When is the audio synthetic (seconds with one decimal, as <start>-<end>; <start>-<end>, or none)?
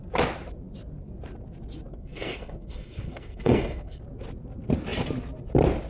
1.9-4.0